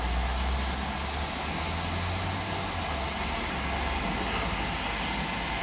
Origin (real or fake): real